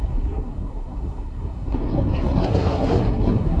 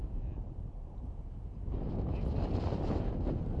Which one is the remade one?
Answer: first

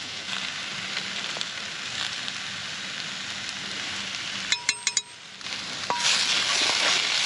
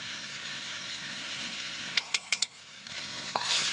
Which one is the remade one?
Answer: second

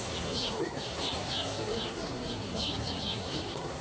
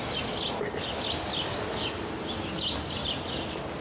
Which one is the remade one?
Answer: first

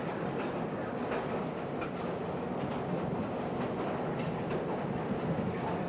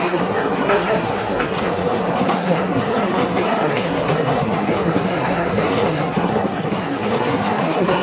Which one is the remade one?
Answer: second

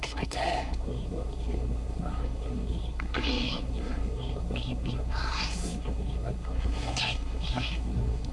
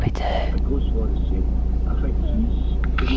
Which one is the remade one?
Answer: first